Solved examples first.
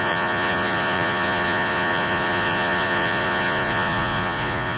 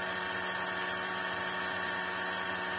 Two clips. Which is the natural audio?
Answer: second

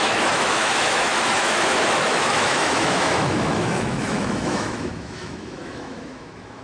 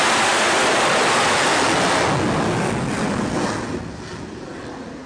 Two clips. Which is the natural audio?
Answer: second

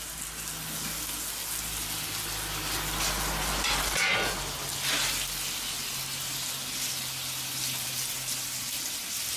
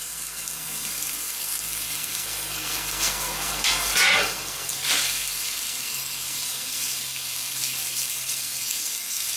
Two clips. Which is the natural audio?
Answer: first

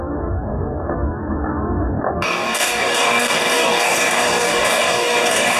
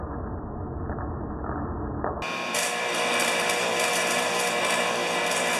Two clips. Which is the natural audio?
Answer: second